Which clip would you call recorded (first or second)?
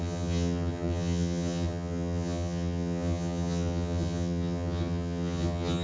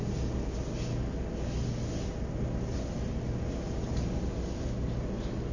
second